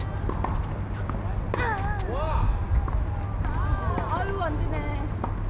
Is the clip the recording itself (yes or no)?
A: yes